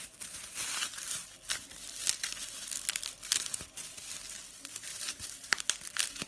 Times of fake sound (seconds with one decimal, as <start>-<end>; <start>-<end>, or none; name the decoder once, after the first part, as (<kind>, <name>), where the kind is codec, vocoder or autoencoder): 4.9-5.6 (vocoder, BigVGAN v2)